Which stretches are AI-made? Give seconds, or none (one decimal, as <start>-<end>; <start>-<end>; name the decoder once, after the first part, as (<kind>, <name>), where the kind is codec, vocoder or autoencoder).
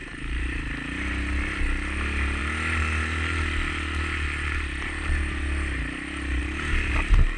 0.0-1.1 (vocoder, BigVGAN v2)